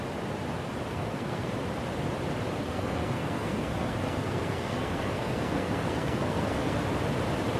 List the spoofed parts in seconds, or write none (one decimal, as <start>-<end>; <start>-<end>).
0.9-1.5; 2.6-6.8